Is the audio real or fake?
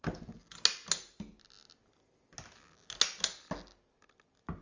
real